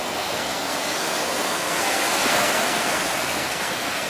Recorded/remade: remade